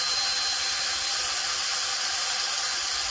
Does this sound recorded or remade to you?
recorded